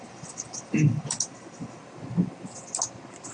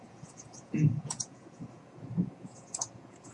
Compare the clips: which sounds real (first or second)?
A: first